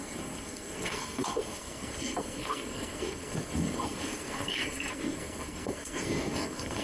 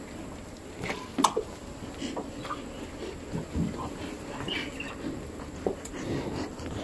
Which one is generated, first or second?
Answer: first